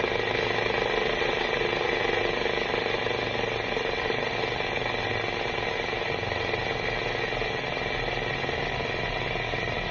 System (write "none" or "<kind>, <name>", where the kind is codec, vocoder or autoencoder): none